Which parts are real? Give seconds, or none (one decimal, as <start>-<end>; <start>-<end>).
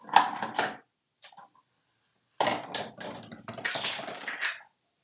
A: 0.0-5.0